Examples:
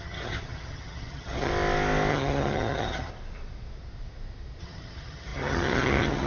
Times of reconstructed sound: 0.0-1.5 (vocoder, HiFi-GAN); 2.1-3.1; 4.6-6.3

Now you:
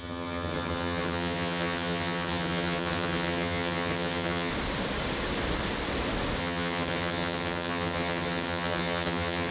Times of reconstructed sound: 0.0-4.5 (vocoder, HiFi-GAN); 6.4-9.5

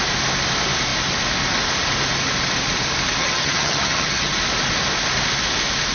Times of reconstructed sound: 3.2-4.3 (vocoder, HiFi-GAN)